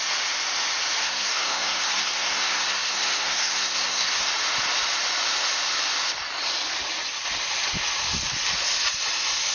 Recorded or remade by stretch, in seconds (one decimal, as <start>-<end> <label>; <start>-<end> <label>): 0.0-1.0 recorded; 1.0-4.3 remade; 4.3-9.5 recorded